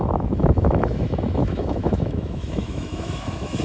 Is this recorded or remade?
remade